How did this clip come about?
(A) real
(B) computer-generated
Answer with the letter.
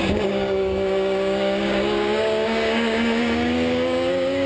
B